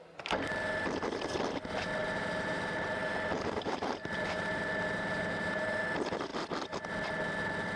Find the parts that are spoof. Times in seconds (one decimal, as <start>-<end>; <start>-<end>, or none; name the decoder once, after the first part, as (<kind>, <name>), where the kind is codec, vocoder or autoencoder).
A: 2.0-5.8 (vocoder, BigVGAN v2)